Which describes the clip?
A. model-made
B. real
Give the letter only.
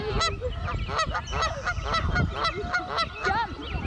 B